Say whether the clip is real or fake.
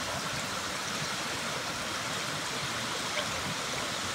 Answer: real